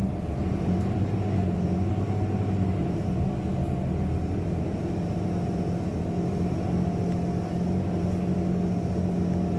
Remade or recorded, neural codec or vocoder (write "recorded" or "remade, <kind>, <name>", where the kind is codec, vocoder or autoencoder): recorded